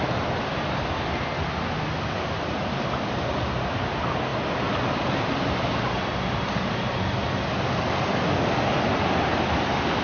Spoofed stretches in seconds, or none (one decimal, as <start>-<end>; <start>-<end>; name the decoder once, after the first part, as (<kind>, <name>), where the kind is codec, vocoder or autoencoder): none